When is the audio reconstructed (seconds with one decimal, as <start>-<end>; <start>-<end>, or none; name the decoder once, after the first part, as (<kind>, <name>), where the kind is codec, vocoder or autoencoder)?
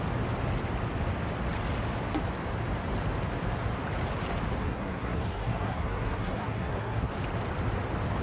4.6-7.1 (codec, SNAC)